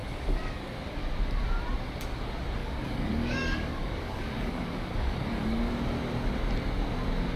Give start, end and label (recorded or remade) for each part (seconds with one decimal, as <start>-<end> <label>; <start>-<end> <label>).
0.0-0.5 remade; 0.5-2.6 recorded; 2.6-5.7 remade; 5.7-7.4 recorded